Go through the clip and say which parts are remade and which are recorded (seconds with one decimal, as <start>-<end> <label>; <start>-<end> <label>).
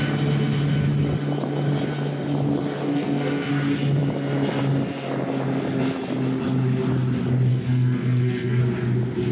0.0-2.9 recorded; 2.9-3.5 remade; 3.5-7.5 recorded; 7.5-8.6 remade; 8.6-9.3 recorded